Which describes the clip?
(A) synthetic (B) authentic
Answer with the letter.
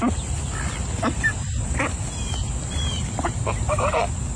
B